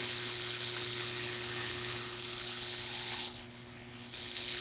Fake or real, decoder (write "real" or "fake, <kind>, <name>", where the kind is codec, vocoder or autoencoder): fake, codec, HILCodec